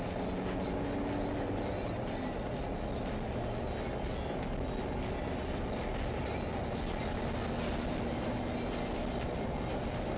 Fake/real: real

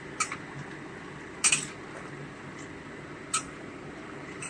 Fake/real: real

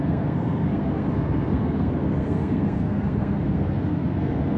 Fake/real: fake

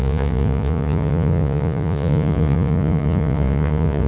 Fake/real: fake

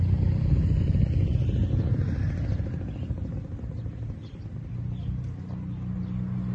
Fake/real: real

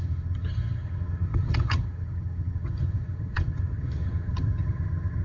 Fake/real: fake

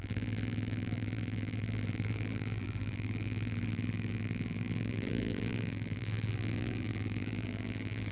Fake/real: fake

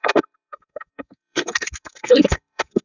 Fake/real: fake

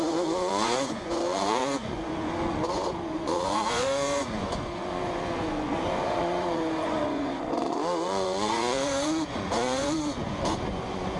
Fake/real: fake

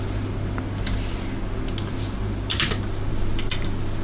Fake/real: real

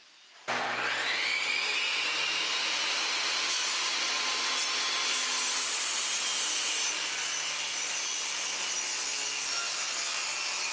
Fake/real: real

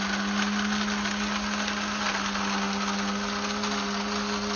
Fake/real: real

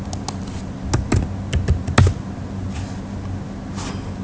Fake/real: real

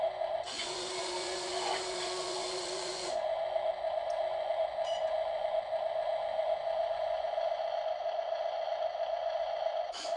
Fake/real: fake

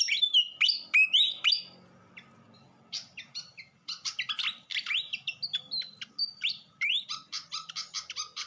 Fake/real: real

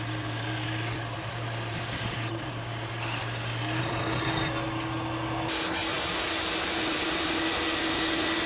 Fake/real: real